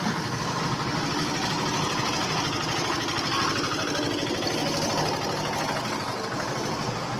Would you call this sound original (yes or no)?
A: yes